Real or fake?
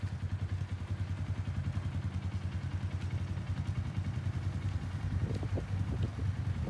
real